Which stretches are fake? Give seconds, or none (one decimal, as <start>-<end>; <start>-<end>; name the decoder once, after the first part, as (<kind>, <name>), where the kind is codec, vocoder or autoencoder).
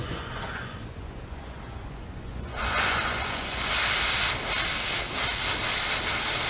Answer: 0.0-3.7 (vocoder, Vocos)